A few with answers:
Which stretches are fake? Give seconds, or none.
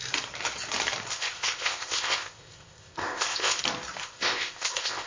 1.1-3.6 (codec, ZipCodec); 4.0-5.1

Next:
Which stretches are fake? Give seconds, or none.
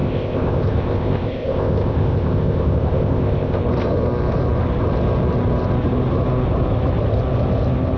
0.0-3.6 (codec, ZipCodec)